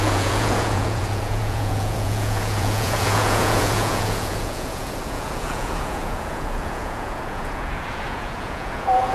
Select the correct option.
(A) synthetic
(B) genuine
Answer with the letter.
A